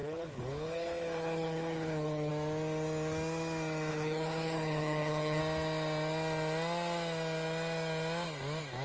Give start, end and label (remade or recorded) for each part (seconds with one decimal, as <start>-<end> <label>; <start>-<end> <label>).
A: 0.0-2.3 remade; 2.3-3.9 recorded; 3.9-5.4 remade; 5.4-8.8 recorded